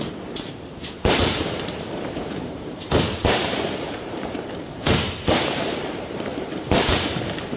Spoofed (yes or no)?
yes